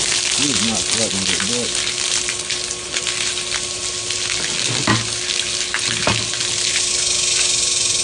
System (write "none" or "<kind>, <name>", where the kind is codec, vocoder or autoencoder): none